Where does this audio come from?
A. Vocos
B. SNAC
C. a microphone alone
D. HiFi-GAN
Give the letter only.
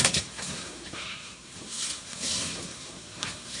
B